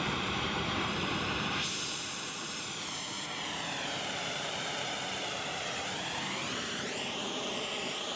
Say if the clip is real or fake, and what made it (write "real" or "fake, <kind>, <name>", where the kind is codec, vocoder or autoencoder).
fake, vocoder, BigVGAN v2